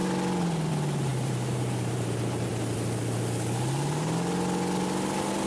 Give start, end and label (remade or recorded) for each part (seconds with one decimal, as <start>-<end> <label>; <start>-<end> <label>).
0.0-0.7 recorded; 0.7-2.5 remade; 2.5-5.5 recorded